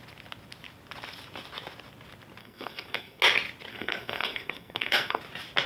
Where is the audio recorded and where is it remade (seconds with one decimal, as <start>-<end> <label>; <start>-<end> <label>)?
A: 0.0-2.4 recorded; 2.4-3.2 remade; 3.2-3.7 recorded; 3.7-5.2 remade; 5.2-5.7 recorded